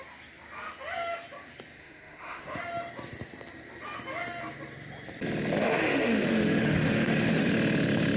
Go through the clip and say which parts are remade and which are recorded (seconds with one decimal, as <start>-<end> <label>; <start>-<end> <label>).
0.0-1.8 recorded; 1.8-2.6 remade; 2.6-5.6 recorded; 5.6-7.5 remade; 7.5-8.2 recorded